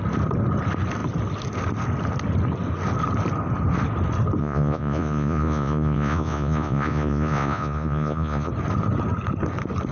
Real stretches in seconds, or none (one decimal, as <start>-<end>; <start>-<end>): 0.0-4.4; 8.5-9.9